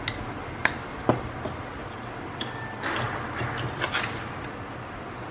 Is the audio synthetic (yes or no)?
no